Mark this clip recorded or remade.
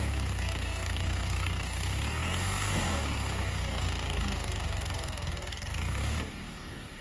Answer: remade